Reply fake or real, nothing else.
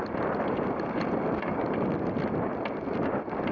real